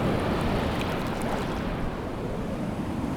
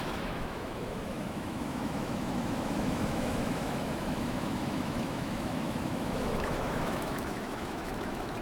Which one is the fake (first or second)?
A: second